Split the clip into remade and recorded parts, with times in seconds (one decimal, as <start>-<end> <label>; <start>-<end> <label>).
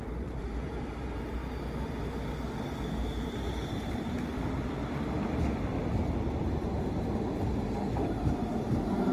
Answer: 0.0-1.4 remade; 1.4-2.9 recorded; 2.9-4.3 remade; 4.3-6.4 recorded; 6.4-9.1 remade